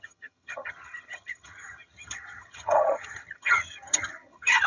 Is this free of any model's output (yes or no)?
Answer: no